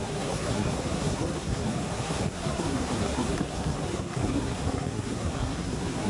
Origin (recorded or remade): remade